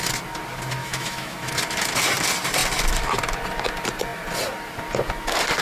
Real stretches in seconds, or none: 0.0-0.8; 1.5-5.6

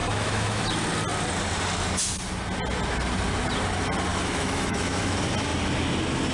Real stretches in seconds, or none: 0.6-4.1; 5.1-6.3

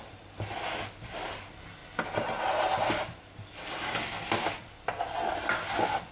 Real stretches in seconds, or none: 0.0-6.1